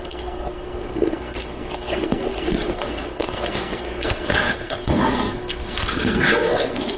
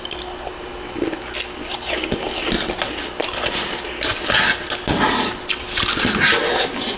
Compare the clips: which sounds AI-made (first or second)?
first